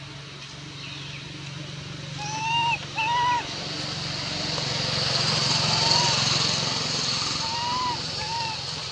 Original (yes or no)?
yes